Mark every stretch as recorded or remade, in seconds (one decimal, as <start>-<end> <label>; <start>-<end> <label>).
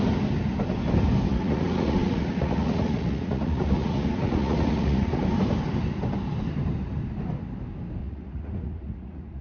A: 0.0-1.3 recorded; 1.3-5.2 remade; 5.2-8.0 recorded; 8.0-9.4 remade